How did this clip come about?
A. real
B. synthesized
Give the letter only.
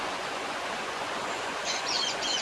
B